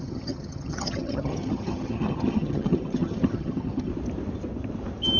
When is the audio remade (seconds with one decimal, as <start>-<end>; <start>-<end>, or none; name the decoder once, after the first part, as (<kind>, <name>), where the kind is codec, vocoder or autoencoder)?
0.0-3.9 (vocoder, HiFi-GAN)